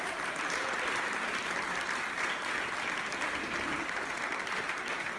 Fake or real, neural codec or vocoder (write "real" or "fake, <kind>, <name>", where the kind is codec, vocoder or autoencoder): fake, vocoder, BigVGAN v2